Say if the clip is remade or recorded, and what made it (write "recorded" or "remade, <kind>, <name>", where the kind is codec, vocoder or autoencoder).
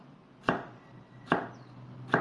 recorded